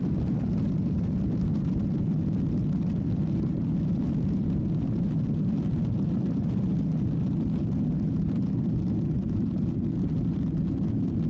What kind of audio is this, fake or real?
real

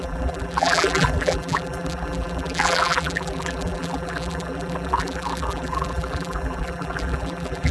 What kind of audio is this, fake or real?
fake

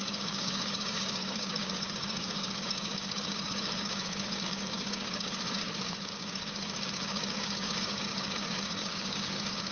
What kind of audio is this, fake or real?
fake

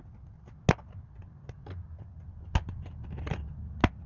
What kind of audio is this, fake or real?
real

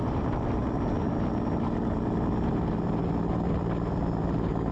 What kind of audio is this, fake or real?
real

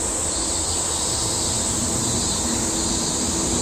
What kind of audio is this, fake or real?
real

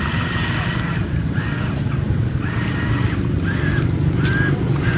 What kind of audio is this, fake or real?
real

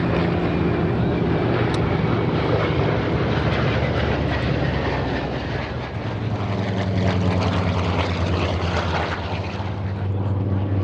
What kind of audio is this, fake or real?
real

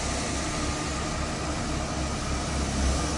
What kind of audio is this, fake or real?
real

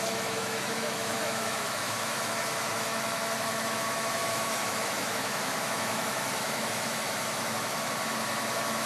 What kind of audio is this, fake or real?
fake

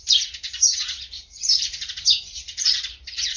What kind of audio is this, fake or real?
fake